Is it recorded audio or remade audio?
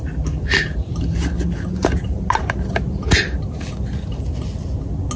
recorded